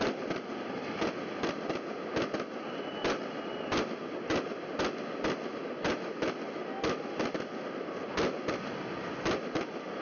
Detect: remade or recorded recorded